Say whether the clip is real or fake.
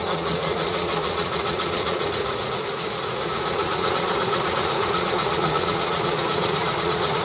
fake